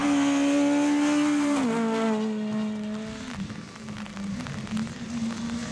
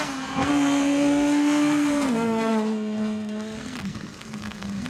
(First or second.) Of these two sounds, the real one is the first